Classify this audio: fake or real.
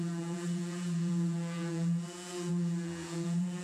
fake